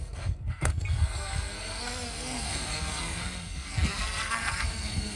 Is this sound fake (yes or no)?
yes